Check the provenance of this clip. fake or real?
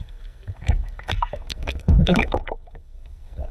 fake